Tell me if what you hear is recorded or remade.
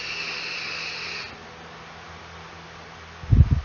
recorded